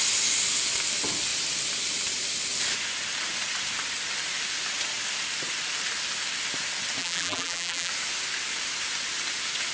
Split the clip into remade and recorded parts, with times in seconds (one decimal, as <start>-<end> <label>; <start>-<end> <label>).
0.0-7.0 recorded; 7.0-7.9 remade; 7.9-9.7 recorded